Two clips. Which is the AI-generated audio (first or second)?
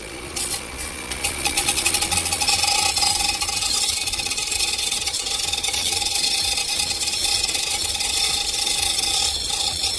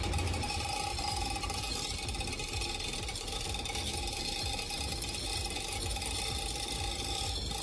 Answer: first